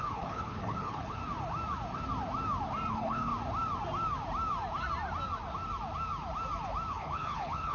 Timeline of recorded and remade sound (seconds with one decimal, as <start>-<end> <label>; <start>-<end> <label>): 0.0-1.2 remade; 1.2-2.9 recorded; 2.9-3.3 remade; 3.3-6.9 recorded; 6.9-7.7 remade